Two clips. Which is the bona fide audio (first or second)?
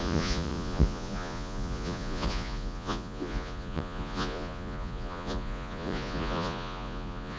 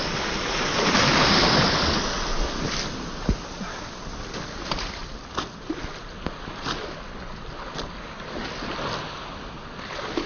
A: second